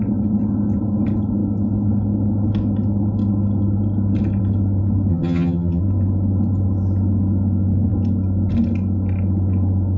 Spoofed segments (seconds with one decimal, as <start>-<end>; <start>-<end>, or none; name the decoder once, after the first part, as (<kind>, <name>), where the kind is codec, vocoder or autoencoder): 5.1-5.8 (vocoder, HiFi-GAN)